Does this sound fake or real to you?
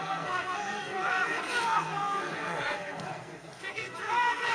fake